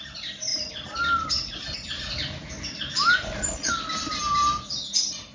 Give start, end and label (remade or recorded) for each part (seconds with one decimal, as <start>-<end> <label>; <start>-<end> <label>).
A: 0.0-0.5 recorded; 0.5-3.7 remade; 3.7-5.3 recorded